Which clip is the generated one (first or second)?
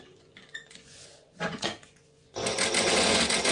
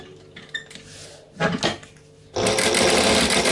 first